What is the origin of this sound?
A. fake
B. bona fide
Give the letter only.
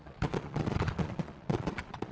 A